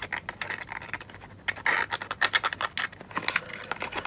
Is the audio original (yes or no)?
yes